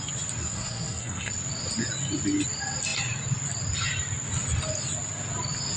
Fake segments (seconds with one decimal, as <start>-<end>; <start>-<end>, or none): 0.4-1.3